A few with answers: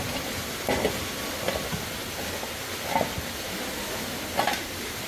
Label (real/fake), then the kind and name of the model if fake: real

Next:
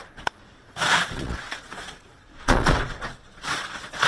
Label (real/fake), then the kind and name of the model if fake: fake, vocoder, Vocos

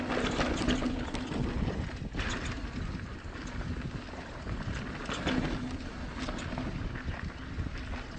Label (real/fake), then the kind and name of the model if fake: real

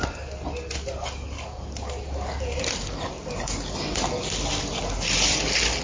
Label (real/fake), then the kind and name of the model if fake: real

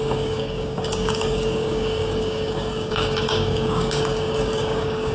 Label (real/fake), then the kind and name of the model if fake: fake, codec, DAC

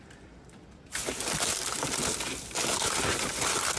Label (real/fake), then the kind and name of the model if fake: real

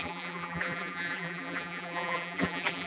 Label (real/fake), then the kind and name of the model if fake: fake, vocoder, BigVGAN v2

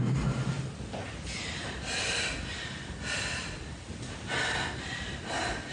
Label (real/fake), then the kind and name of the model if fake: real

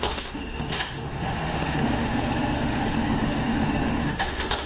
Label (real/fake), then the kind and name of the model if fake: fake, autoencoder, DAC-VAE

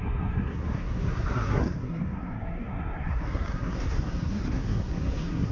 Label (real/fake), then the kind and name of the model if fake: fake, codec, SNAC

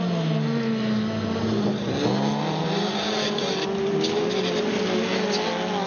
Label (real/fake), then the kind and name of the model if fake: real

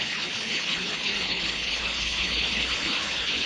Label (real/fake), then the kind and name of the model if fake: fake, codec, HILCodec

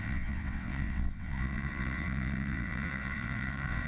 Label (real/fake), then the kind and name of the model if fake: fake, vocoder, WaveNeXt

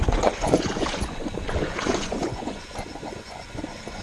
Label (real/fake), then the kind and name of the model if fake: fake, vocoder, Vocos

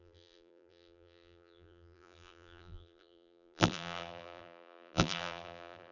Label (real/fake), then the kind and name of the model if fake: fake, vocoder, BigVGAN v2